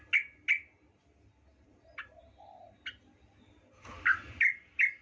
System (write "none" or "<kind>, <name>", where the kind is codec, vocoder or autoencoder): none